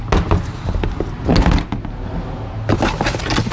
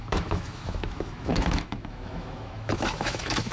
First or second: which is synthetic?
second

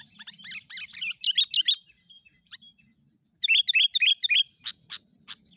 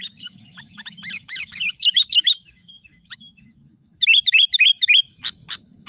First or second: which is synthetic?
second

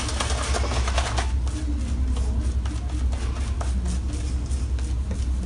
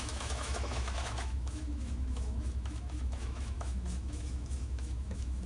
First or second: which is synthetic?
second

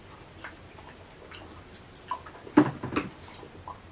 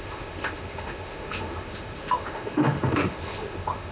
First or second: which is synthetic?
second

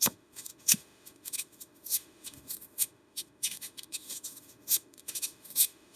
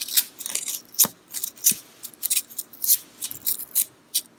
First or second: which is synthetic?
first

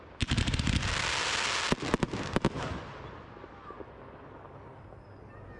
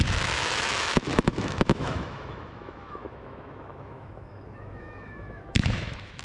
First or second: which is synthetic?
second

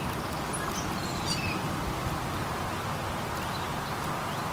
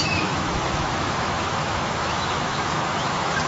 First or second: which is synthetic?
second